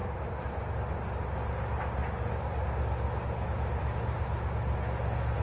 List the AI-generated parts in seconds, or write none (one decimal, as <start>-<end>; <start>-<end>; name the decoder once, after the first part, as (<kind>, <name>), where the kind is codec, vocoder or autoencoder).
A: none

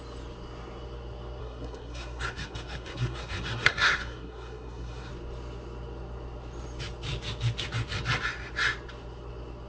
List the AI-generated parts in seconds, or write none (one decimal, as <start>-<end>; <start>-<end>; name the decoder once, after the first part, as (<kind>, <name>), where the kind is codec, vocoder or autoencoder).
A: 1.4-5.1 (codec, SNAC)